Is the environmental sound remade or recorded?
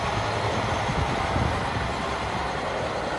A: recorded